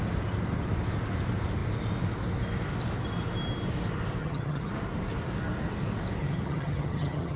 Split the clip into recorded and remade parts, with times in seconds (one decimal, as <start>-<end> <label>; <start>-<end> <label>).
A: 0.0-4.2 recorded; 4.2-4.7 remade; 4.7-6.2 recorded; 6.2-7.4 remade